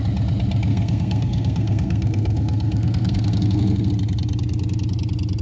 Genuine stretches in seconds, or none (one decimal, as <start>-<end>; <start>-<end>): 0.0-0.7; 3.9-5.4